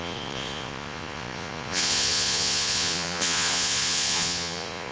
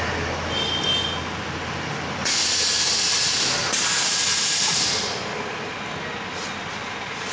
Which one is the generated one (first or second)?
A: first